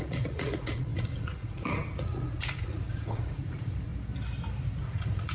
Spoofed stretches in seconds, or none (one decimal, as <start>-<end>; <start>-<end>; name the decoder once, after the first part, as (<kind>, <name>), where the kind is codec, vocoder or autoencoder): 0.0-3.9 (vocoder, Vocos); 4.8-5.3